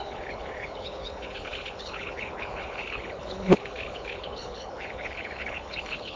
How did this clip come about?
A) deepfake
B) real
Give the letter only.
A